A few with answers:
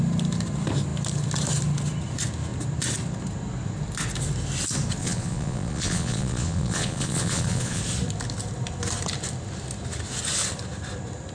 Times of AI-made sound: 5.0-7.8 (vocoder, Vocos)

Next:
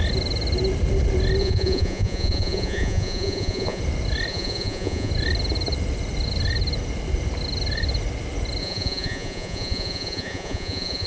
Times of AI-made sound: 1.4-3.8 (vocoder, Vocos); 4.3-5.1; 8.6-11.1